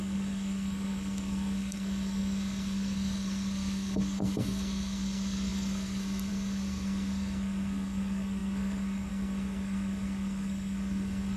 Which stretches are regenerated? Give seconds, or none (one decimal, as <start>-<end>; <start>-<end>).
0.0-11.4